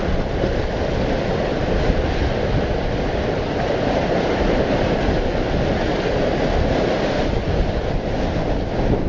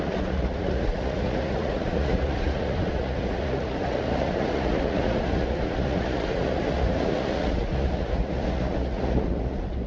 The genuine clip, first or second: first